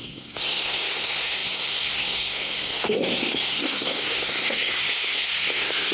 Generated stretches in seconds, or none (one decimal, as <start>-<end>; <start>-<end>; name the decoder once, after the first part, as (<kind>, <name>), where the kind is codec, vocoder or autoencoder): 0.0-5.9 (codec, SNAC)

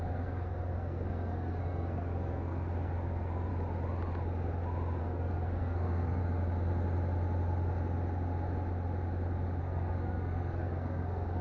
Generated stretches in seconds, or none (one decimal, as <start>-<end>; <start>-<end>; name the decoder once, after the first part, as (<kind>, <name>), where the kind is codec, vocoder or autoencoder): 0.0-3.5 (codec, SNAC); 5.0-6.2; 9.6-11.4

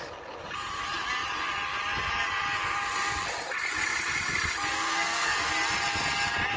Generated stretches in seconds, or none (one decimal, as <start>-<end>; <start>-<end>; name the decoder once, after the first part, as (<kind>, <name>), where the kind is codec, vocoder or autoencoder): 4.7-5.5 (codec, SNAC)

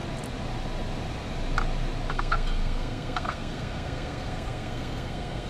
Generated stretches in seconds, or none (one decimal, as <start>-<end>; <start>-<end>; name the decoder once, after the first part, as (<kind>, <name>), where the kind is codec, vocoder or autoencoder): 2.1-5.5 (codec, SNAC)